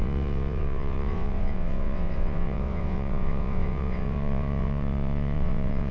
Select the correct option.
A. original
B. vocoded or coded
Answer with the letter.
B